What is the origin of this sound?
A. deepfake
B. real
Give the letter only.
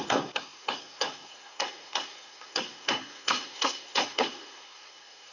A